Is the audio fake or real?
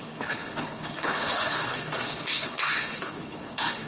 fake